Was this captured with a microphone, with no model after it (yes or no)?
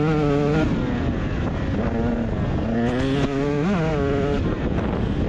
yes